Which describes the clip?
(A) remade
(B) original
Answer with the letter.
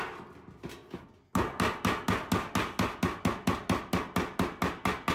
B